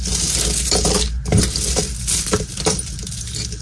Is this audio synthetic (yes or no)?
no